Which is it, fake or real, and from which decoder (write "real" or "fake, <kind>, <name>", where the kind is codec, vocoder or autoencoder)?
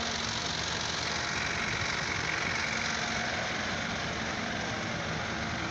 real